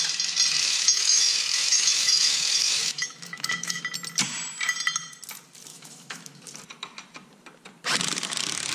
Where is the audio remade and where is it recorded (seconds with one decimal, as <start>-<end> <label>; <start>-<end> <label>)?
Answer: 0.0-0.6 recorded; 0.6-3.8 remade; 3.8-5.7 recorded; 5.7-6.4 remade; 6.4-8.7 recorded